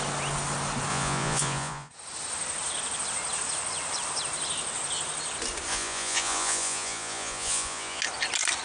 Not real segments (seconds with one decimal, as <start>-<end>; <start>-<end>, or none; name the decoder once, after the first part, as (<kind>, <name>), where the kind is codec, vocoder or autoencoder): 0.9-1.9 (vocoder, Vocos); 5.7-8.0